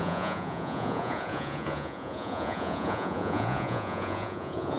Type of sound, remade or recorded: remade